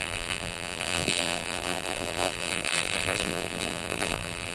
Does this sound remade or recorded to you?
remade